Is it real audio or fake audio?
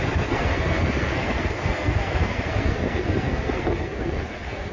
fake